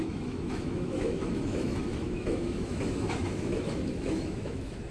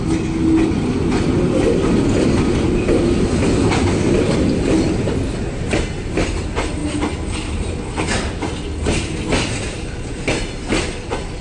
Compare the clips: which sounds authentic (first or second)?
second